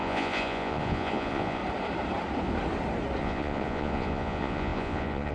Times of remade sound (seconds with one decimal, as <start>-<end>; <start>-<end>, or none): 0.0-1.6; 3.2-5.3